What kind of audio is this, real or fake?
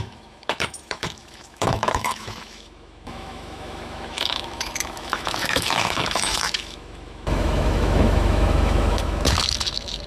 fake